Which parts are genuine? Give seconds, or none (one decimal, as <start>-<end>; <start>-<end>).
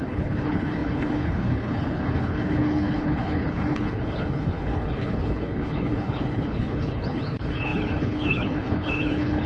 none